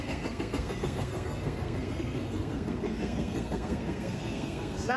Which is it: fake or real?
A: fake